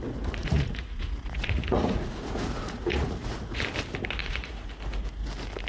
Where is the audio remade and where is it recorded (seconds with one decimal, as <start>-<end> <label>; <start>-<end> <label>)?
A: 0.0-0.4 recorded; 0.4-3.6 remade; 3.6-4.2 recorded; 4.2-4.7 remade; 4.7-5.7 recorded